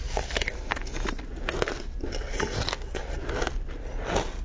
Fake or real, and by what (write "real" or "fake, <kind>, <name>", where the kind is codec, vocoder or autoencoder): real